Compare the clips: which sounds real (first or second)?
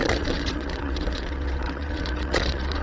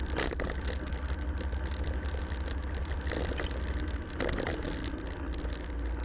second